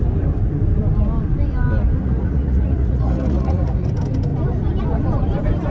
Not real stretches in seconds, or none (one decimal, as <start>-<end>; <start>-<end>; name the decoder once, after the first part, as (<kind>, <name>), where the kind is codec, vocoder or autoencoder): 2.0-3.9 (vocoder, Vocos)